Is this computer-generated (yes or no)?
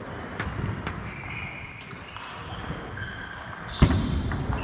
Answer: yes